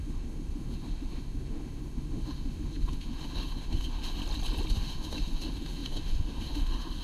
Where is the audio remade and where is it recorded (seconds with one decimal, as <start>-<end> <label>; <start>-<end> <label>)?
0.0-4.2 remade; 4.2-4.7 recorded; 4.7-7.0 remade

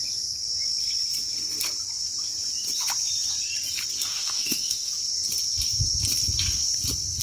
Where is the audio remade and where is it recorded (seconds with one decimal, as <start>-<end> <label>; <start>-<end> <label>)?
0.0-4.1 recorded; 4.1-4.9 remade; 4.9-7.2 recorded